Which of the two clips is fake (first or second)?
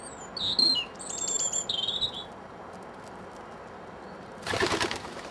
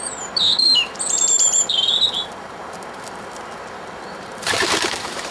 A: second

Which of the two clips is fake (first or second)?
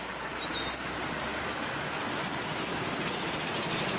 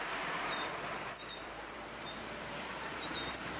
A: second